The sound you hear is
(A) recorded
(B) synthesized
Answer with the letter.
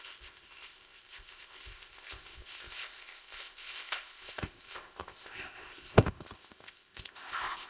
B